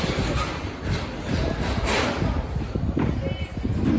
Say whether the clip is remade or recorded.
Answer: recorded